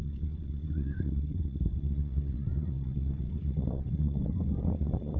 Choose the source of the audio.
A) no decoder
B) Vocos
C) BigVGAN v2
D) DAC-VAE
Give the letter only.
B